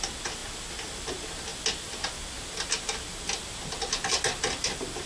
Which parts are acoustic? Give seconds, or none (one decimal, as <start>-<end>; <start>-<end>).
0.0-5.1